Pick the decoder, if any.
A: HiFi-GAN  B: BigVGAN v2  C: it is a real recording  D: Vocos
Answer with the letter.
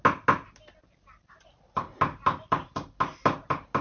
C